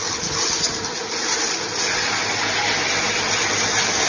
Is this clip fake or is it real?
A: real